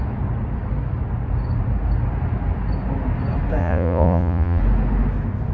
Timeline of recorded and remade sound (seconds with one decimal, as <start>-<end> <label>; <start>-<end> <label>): 0.0-3.6 recorded; 3.6-4.6 remade; 4.6-5.5 recorded